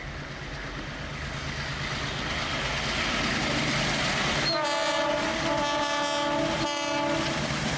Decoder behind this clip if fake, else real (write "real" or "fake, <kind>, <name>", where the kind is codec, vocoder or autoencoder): real